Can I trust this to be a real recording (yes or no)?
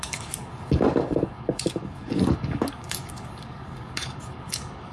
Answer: no